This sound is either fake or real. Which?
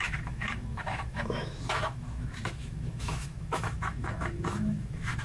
fake